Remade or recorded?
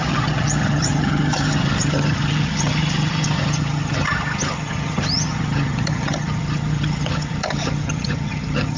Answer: remade